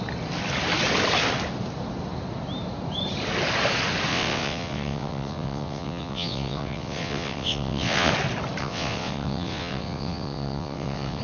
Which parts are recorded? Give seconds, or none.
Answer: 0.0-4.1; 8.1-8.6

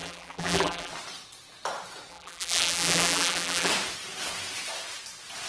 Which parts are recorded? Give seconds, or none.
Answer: 0.9-2.1; 3.7-5.5

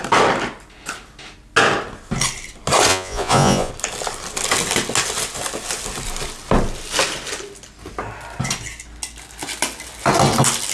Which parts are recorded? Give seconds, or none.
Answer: 0.0-2.9; 3.7-10.7

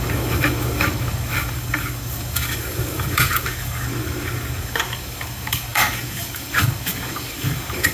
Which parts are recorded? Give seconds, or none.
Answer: none

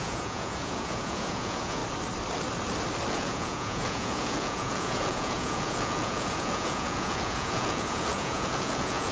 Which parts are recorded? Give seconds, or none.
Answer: 1.8-3.1